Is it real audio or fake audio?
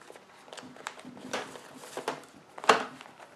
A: real